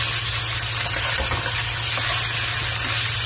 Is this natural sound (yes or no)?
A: yes